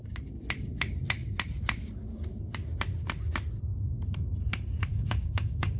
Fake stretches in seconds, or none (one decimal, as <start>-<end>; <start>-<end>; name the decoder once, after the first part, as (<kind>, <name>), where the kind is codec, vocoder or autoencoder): 4.9-5.8 (codec, DAC)

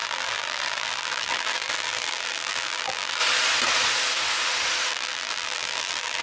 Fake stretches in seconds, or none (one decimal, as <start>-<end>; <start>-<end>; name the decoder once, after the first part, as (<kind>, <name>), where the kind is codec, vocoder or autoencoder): 0.0-3.2 (vocoder, BigVGAN v2); 4.9-6.2

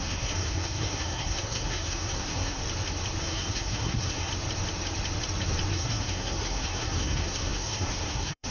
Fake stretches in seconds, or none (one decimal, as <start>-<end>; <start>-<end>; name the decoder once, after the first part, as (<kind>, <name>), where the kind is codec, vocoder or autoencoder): 0.0-2.6 (codec, SNAC); 3.2-4.3; 5.7-8.5

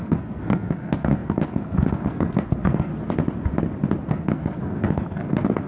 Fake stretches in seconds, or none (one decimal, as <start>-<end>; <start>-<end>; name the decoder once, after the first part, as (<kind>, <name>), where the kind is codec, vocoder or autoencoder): 0.0-2.9 (codec, SNAC); 4.1-5.7

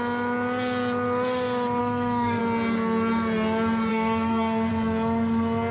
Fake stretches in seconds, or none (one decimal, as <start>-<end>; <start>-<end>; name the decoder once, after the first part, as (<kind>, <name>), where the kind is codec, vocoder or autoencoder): 1.8-2.4 (codec, SNAC); 3.9-4.7

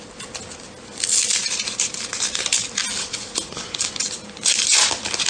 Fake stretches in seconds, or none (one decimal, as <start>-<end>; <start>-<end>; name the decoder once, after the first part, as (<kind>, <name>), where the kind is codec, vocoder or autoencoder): 1.4-2.2 (vocoder, BigVGAN v2)

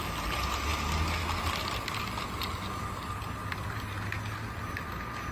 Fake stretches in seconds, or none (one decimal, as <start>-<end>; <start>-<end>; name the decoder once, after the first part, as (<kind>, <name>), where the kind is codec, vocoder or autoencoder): none